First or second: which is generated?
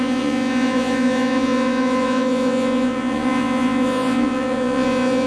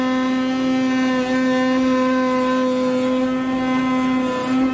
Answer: first